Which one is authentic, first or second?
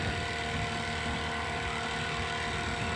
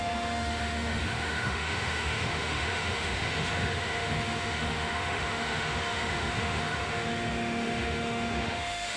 first